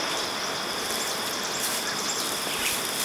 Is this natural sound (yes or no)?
no